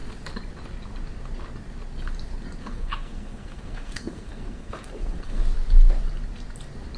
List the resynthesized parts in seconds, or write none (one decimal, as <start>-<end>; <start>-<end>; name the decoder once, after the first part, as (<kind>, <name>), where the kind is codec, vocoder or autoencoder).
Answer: 2.6-5.4 (codec, SNAC)